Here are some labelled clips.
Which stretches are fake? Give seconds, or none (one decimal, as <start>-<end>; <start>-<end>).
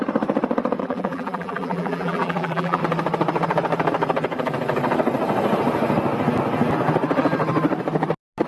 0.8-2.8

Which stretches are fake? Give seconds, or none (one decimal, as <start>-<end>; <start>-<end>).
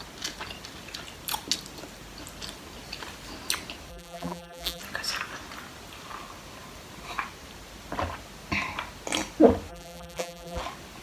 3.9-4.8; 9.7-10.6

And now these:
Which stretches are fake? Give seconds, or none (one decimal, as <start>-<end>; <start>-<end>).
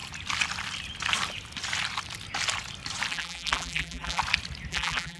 3.1-4.2; 4.7-5.2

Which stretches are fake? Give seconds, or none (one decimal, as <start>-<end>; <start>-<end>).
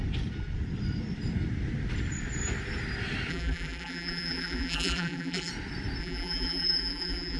3.3-5.5; 6.0-7.4